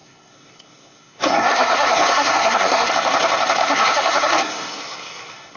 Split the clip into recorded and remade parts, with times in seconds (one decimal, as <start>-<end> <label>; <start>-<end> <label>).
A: 0.0-2.9 remade; 2.9-3.6 recorded; 3.6-5.6 remade